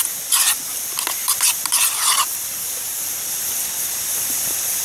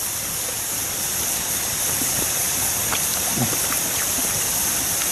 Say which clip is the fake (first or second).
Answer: second